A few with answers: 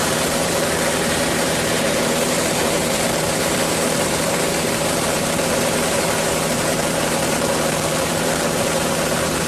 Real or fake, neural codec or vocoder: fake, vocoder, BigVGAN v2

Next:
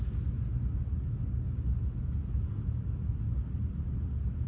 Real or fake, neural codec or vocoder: real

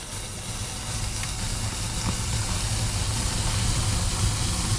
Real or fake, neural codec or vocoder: real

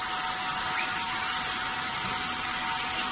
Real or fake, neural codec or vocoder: real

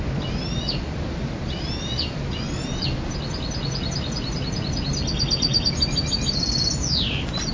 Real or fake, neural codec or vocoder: real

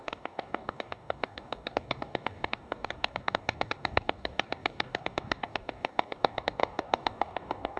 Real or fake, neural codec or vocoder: fake, codec, DAC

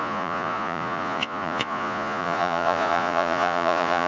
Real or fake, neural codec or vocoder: fake, vocoder, Vocos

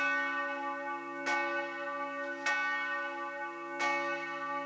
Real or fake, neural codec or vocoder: real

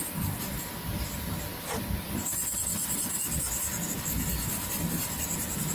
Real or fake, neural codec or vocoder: real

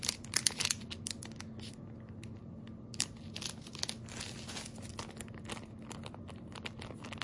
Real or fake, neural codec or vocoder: real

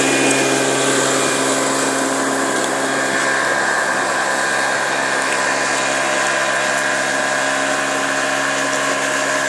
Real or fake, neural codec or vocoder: real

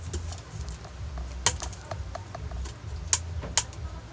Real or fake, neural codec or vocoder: real